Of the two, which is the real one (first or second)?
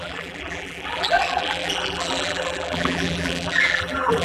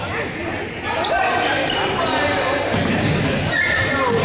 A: second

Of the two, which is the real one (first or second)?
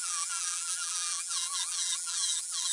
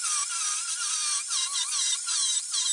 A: second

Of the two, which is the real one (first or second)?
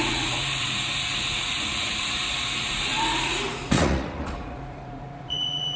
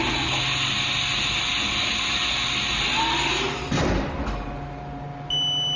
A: second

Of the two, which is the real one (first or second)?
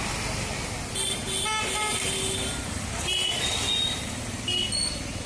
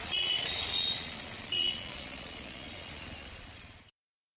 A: first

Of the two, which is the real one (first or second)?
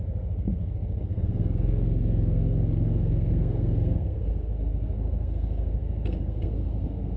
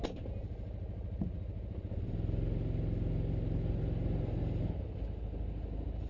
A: second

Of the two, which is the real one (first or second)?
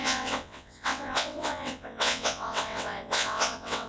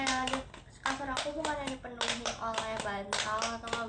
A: second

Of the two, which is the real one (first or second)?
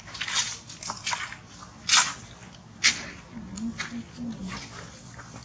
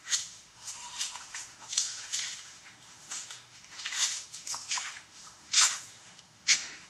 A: first